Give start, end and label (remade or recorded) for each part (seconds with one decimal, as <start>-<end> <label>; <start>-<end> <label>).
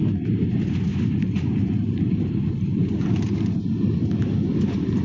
0.0-0.9 recorded; 0.9-3.9 remade; 3.9-5.0 recorded